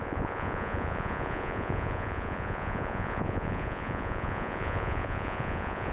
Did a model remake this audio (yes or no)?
yes